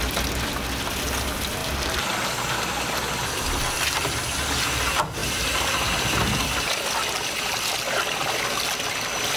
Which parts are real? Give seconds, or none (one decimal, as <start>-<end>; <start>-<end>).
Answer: 0.0-9.4